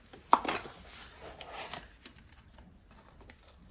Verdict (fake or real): real